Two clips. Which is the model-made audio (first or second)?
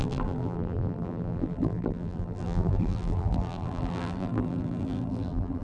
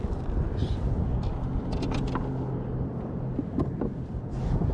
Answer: first